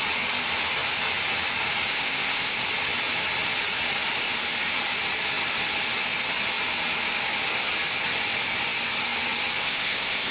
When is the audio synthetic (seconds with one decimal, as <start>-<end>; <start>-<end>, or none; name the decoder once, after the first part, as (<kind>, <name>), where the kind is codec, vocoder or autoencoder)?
1.9-2.6 (codec, ZipCodec); 9.6-10.3